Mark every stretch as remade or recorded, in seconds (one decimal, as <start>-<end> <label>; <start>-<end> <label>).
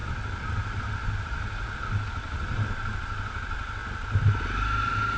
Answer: 0.0-5.2 recorded